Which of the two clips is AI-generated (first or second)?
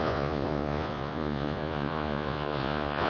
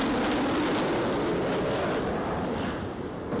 first